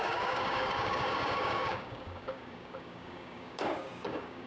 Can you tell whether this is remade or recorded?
remade